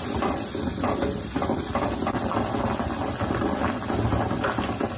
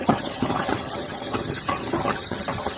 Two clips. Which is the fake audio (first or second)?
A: second